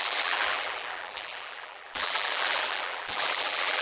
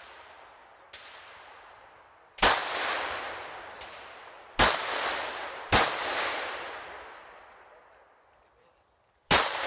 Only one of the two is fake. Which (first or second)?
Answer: first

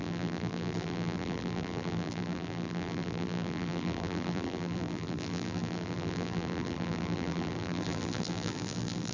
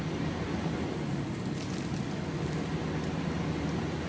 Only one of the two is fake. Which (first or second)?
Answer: first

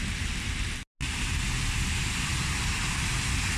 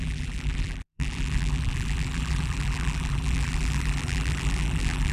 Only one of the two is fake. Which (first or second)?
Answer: second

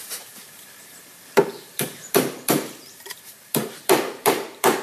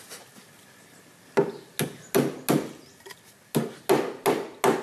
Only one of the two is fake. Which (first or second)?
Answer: first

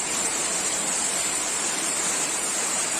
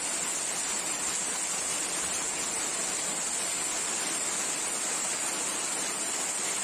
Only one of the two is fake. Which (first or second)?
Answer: first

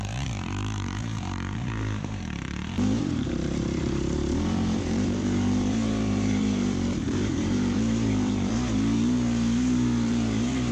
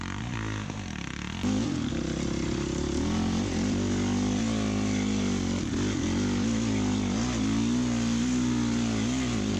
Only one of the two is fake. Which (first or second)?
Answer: first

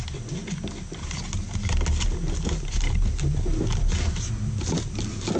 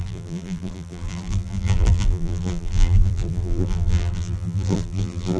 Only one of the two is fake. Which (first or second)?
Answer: second